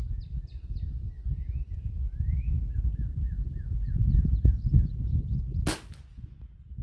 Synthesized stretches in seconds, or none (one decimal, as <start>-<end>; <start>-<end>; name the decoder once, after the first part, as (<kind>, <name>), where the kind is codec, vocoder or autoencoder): none